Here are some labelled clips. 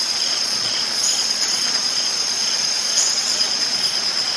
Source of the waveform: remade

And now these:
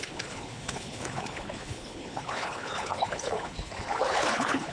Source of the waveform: remade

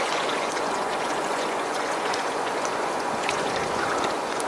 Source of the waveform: remade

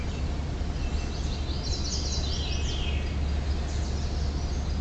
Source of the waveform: recorded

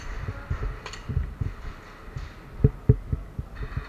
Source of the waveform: recorded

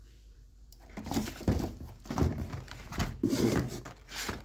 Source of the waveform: remade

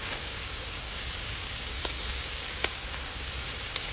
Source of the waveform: remade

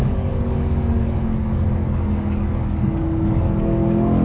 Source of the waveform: remade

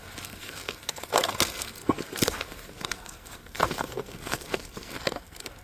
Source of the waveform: remade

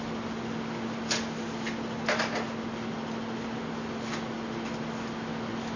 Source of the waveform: recorded